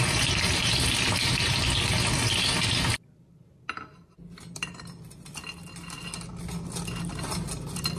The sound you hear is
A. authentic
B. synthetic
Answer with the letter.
A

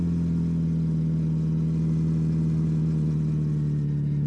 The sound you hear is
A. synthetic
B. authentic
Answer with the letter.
B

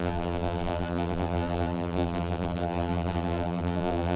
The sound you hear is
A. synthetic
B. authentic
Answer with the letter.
A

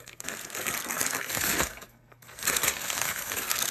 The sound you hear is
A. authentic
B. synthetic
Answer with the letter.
B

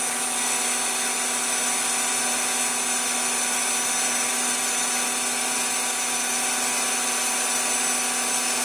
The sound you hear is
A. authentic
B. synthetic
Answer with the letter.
A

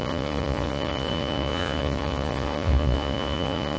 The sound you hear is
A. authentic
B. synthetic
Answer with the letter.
B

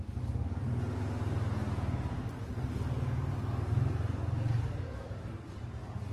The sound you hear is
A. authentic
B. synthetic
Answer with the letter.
A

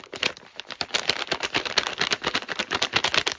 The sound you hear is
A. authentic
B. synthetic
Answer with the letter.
A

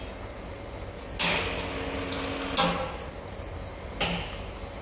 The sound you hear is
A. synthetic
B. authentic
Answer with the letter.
B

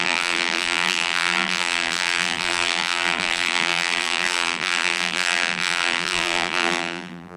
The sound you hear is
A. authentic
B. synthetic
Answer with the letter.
B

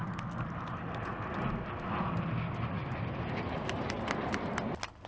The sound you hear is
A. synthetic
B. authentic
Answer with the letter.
B